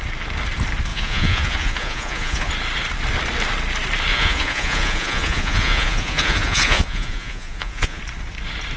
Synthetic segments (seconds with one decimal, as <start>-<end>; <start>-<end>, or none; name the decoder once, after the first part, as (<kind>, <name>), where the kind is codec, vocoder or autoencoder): 0.9-2.5 (vocoder, Vocos); 4.1-8.0